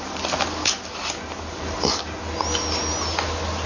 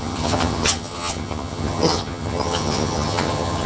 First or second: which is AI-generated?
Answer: second